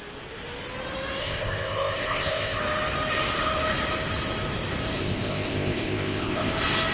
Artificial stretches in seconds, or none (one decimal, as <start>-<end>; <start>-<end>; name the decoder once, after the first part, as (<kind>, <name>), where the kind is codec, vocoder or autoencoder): 1.2-2.6 (codec, ZipCodec); 5.0-6.5

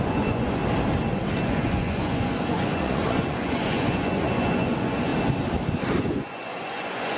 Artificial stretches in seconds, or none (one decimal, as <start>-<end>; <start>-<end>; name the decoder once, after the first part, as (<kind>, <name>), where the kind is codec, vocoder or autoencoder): 0.0-0.6 (vocoder, Vocos); 1.4-5.1; 6.0-7.2

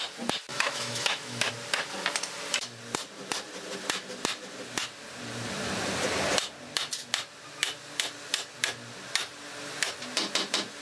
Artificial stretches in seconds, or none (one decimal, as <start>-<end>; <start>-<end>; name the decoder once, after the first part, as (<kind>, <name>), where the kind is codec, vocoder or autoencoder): 0.5-1.5 (autoencoder, DAC-VAE)